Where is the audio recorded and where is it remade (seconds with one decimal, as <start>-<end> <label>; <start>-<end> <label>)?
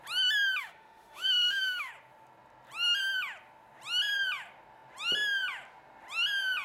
0.0-0.6 recorded; 0.6-1.9 remade; 1.9-6.6 recorded